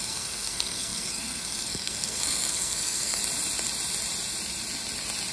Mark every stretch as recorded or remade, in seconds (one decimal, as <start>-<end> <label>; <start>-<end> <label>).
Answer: 0.0-3.2 remade; 3.2-5.3 recorded